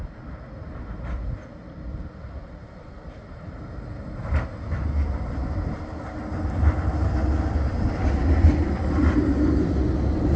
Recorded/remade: recorded